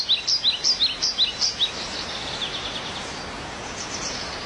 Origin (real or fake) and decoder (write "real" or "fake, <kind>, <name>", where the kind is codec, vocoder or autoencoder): real